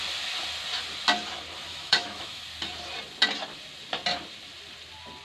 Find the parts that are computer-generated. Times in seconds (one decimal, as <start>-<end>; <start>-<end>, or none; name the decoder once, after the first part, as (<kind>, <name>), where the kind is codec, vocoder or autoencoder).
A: 1.7-2.4 (autoencoder, DAC-VAE)